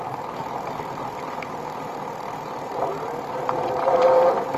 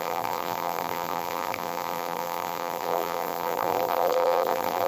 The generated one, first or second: second